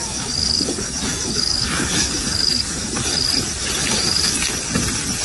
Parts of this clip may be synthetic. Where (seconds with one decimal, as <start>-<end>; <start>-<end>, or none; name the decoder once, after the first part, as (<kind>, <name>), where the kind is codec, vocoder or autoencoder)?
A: 0.0-2.9 (codec, DAC); 3.8-4.5